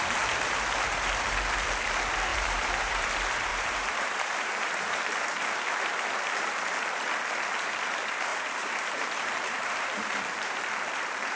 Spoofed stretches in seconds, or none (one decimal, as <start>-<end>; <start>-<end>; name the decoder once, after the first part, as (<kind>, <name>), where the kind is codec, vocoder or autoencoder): 2.3-3.1 (vocoder, BigVGAN v2); 3.5-5.0; 8.3-10.6